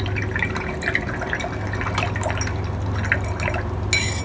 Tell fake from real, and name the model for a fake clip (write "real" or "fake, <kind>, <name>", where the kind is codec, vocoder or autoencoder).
real